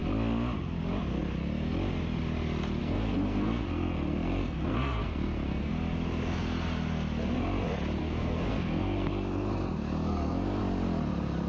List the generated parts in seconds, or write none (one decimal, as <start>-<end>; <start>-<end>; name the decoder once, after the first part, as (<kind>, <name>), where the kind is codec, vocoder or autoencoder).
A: 2.8-5.7 (codec, SNAC); 8.0-10.6